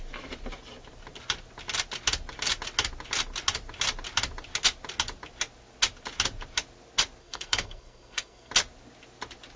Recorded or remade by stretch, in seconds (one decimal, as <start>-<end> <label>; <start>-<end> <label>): 0.0-7.2 recorded; 7.2-8.5 remade; 8.5-9.6 recorded